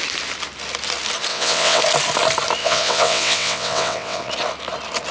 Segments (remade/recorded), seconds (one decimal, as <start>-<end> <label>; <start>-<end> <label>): 0.0-1.3 recorded; 1.3-1.8 remade; 1.8-2.6 recorded; 2.6-4.3 remade; 4.3-5.1 recorded